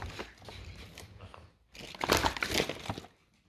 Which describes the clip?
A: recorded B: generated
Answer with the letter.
A